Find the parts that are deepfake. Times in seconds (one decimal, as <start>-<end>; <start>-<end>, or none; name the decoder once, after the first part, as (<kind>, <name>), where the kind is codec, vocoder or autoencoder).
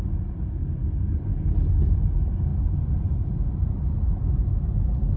0.6-1.5 (codec, DAC)